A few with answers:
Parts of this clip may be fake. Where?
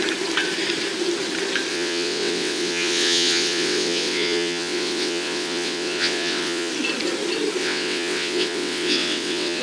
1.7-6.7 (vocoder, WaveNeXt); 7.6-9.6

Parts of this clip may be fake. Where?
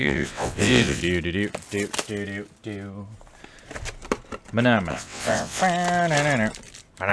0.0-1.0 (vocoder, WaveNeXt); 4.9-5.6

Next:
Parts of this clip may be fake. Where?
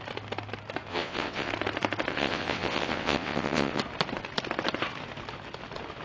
0.9-1.5 (vocoder, WaveNeXt); 2.1-3.8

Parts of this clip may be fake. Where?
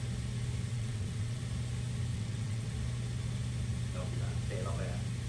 0.7-1.4 (vocoder, WaveNeXt); 2.1-2.7